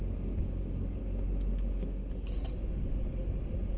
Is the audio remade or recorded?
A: recorded